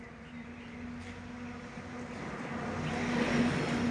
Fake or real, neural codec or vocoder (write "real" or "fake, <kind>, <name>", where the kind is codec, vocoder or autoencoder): real